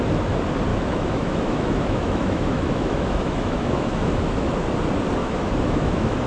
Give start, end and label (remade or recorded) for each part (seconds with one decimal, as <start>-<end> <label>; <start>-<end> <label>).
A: 0.0-0.7 recorded; 0.7-4.5 remade; 4.5-5.2 recorded; 5.2-6.3 remade